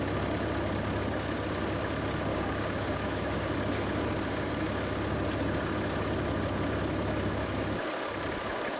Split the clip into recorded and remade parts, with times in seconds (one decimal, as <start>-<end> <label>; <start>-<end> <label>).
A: 0.0-2.3 recorded; 2.3-3.1 remade; 3.1-8.8 recorded

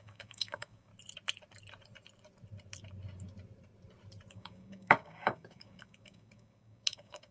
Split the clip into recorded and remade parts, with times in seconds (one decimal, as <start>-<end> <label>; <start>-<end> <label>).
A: 0.0-0.9 remade; 0.9-4.3 recorded; 4.3-7.3 remade

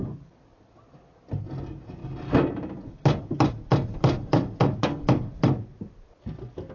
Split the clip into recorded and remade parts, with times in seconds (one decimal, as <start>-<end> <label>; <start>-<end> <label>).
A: 0.0-6.7 recorded

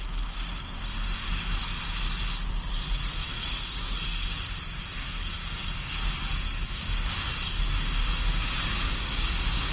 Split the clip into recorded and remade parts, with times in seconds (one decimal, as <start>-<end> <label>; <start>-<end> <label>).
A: 0.0-3.2 recorded; 3.2-4.5 remade; 4.5-5.4 recorded; 5.4-9.7 remade